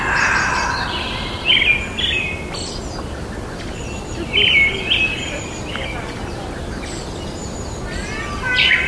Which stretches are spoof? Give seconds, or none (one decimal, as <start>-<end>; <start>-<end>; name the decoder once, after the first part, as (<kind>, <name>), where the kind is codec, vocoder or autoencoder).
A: none